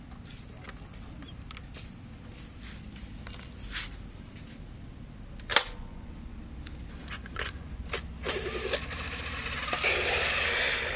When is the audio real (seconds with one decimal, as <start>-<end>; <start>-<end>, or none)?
0.0-5.5; 6.4-7.0; 7.9-11.0

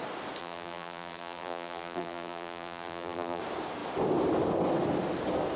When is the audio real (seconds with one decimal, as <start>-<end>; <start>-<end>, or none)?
0.0-0.4; 3.4-5.6

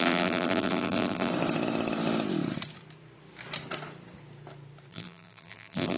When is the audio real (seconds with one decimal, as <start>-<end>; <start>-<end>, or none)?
1.3-4.9

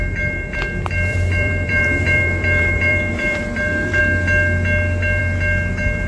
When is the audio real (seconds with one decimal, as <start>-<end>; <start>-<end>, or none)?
0.0-1.1; 4.0-6.1

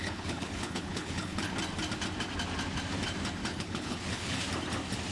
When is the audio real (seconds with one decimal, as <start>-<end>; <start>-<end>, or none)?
1.5-3.5; 4.4-5.1